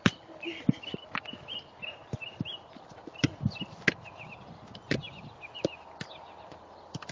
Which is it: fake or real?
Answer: real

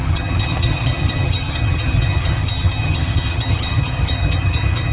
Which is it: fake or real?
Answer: fake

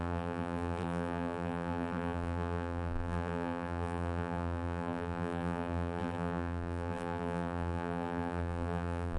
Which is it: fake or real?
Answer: fake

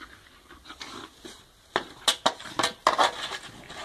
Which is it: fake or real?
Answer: real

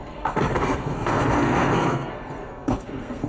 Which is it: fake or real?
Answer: fake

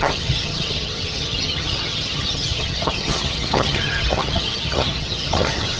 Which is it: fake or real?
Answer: fake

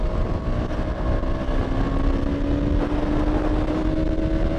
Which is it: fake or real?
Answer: real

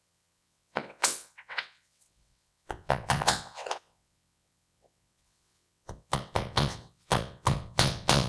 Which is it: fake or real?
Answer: fake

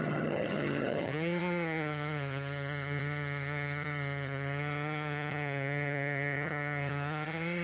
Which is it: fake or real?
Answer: fake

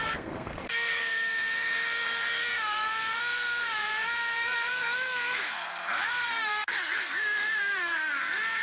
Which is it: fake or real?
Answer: fake